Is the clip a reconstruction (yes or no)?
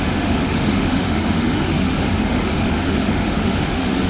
yes